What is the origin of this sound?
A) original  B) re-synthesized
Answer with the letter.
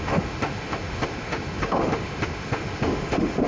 B